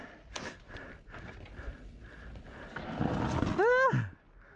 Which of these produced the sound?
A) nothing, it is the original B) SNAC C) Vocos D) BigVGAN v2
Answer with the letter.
A